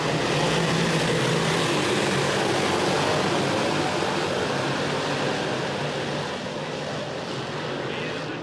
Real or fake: real